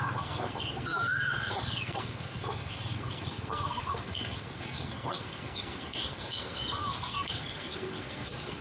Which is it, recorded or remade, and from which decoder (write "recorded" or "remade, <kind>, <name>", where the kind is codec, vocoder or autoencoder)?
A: remade, codec, SNAC